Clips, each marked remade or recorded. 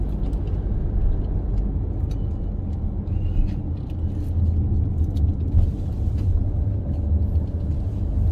recorded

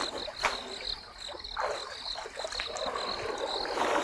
recorded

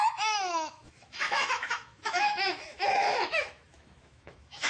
remade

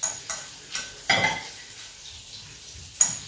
recorded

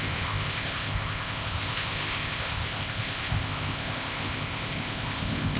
remade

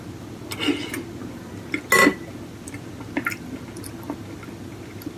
recorded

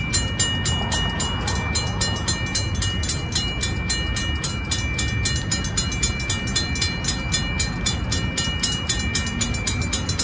recorded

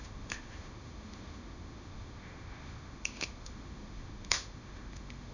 remade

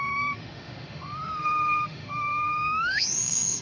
remade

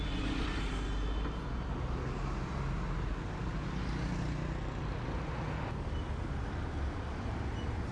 recorded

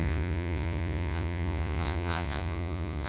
remade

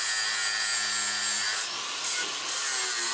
recorded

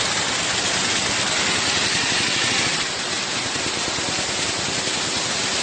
recorded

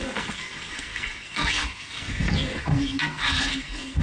remade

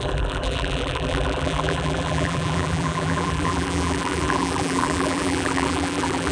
remade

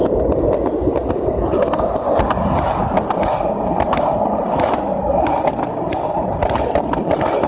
recorded